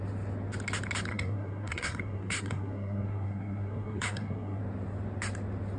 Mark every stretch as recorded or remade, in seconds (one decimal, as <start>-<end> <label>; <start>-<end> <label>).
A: 0.0-1.1 recorded; 1.1-4.6 remade; 4.6-5.8 recorded

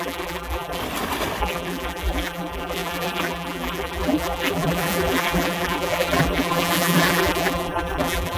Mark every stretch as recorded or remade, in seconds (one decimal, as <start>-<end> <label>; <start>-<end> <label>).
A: 0.0-0.8 remade; 0.8-1.4 recorded; 1.4-8.4 remade

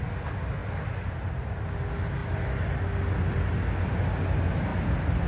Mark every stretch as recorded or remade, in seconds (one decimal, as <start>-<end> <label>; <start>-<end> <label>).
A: 0.0-5.3 recorded

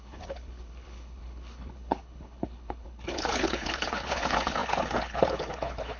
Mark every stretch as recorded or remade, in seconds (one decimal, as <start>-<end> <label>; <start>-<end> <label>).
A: 0.0-6.0 remade

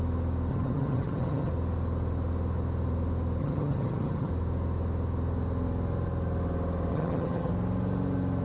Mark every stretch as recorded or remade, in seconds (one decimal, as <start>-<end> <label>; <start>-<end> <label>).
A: 0.0-0.5 recorded; 0.5-1.5 remade; 1.5-3.4 recorded; 3.4-4.3 remade; 4.3-6.9 recorded; 6.9-7.5 remade; 7.5-8.4 recorded